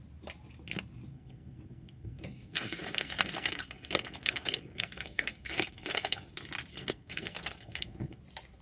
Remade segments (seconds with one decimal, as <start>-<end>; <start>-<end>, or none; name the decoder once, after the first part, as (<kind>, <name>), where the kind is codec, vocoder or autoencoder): 1.1-6.3 (codec, SNAC); 6.7-8.2